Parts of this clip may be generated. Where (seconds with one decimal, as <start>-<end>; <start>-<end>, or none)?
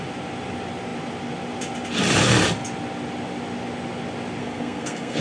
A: 4.4-5.2